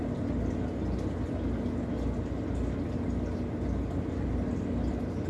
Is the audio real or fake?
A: real